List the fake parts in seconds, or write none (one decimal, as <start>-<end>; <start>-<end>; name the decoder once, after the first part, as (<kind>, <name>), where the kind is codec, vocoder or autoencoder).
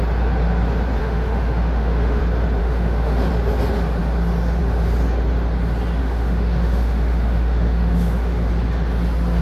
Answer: 1.0-2.2 (autoencoder, DAC-VAE); 2.6-3.3; 6.0-8.5